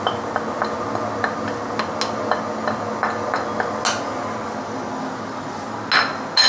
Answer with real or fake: real